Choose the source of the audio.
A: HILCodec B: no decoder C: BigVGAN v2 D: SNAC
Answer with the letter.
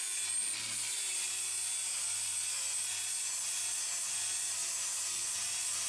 B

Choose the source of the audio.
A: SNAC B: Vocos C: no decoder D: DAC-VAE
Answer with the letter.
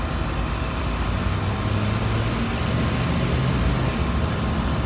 C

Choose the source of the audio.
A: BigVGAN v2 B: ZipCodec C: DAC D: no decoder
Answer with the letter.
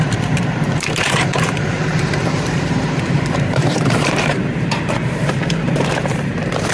A